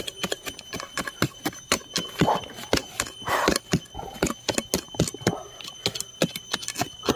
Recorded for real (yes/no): yes